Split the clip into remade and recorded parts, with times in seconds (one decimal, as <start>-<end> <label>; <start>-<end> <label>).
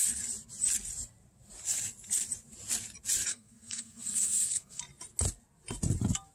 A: 0.0-3.3 recorded; 3.3-4.8 remade; 4.8-6.3 recorded